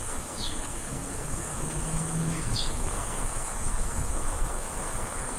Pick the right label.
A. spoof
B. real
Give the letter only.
A